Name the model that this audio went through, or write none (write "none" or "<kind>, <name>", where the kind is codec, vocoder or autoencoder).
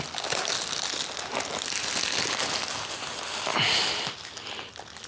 none